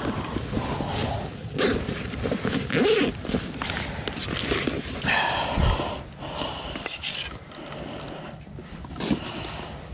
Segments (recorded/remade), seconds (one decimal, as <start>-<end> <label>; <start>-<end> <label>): 0.0-9.9 recorded